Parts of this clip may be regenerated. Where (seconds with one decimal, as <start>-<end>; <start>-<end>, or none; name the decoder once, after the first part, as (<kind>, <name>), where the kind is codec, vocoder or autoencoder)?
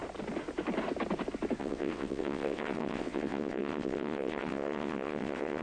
1.6-5.6 (vocoder, WaveNeXt)